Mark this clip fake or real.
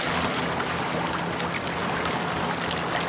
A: real